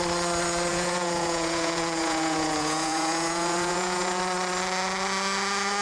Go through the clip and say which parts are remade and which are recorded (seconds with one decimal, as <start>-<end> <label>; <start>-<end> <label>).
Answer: 0.0-0.7 recorded; 0.7-4.2 remade; 4.2-5.8 recorded